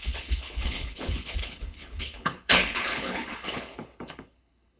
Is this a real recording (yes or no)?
no